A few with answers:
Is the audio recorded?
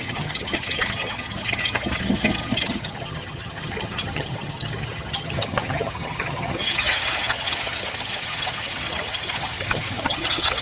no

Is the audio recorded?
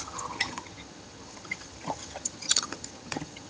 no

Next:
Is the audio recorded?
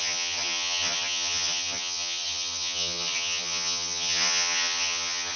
no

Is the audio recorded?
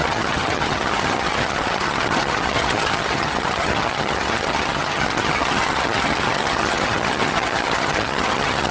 no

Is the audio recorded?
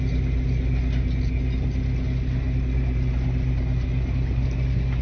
yes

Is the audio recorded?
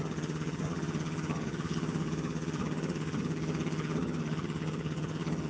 no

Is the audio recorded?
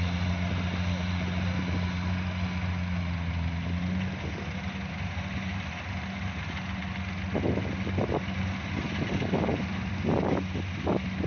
yes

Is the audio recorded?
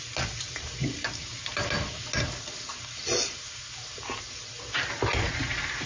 yes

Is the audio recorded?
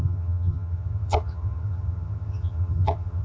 no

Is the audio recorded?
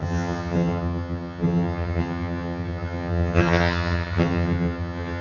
no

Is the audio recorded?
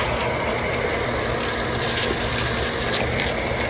yes